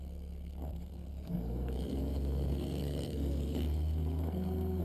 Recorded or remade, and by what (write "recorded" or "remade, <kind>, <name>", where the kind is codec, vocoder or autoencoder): remade, codec, SNAC